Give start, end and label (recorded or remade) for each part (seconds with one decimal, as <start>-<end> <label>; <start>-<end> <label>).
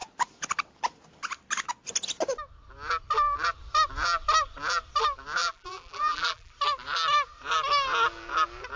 0.0-5.4 recorded; 5.4-6.5 remade; 6.5-8.8 recorded